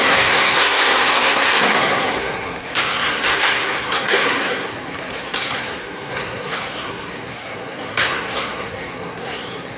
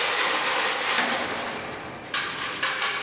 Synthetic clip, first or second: first